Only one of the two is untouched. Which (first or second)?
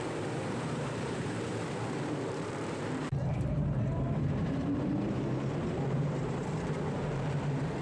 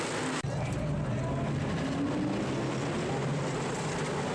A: second